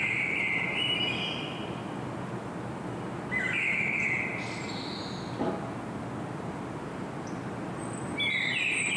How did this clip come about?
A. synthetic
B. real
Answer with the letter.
B